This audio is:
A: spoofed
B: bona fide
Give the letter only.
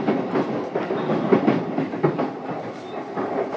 B